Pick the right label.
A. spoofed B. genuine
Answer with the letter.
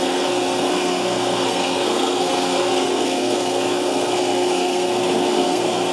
A